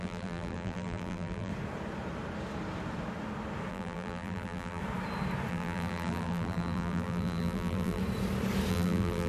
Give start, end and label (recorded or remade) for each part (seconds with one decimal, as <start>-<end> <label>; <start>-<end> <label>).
0.0-1.5 remade; 1.5-3.7 recorded; 3.7-4.8 remade; 4.8-5.5 recorded; 5.5-8.0 remade; 8.0-8.7 recorded; 8.7-9.3 remade

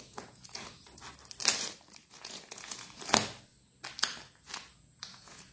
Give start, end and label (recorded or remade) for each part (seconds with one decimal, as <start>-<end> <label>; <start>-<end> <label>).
0.0-1.0 remade; 1.0-2.1 recorded; 2.1-3.0 remade; 3.0-4.7 recorded; 4.7-5.5 remade